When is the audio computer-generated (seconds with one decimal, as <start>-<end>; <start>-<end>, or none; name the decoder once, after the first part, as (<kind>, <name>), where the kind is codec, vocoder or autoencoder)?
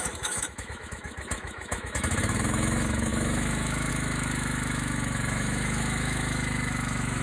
0.0-7.2 (autoencoder, DAC-VAE)